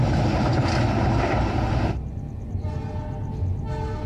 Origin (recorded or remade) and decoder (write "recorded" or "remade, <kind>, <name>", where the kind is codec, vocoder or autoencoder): recorded